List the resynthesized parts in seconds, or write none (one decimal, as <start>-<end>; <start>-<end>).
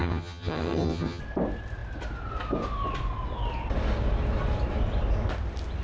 0.0-1.2